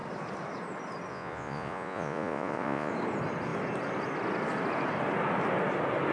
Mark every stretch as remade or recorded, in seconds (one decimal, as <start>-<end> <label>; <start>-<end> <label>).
0.0-1.1 recorded; 1.1-2.9 remade; 2.9-6.1 recorded